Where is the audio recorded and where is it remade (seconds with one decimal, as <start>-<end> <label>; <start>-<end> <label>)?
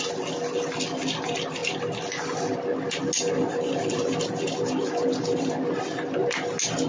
0.0-6.9 recorded